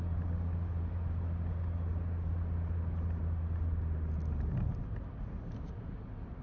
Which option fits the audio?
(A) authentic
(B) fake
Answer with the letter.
A